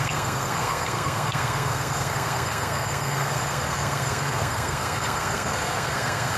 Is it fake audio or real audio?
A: fake